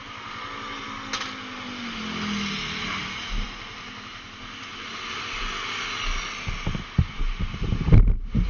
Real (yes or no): yes